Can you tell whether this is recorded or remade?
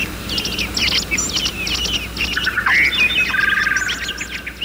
recorded